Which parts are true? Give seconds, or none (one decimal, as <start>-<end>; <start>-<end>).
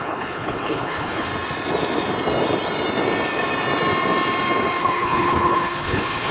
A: 1.3-4.8